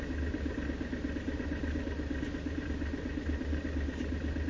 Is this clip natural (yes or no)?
yes